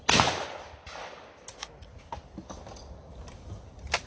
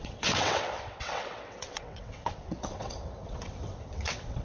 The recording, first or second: first